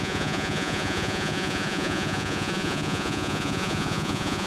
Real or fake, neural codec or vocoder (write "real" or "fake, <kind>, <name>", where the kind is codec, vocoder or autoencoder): fake, vocoder, Vocos